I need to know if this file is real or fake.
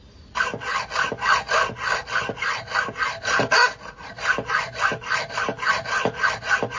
real